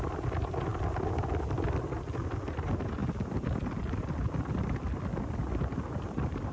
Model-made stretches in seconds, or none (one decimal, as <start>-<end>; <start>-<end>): none